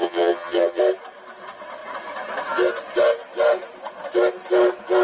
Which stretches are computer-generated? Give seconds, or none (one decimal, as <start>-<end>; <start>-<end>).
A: 0.0-0.8